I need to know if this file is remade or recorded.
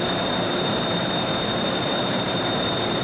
remade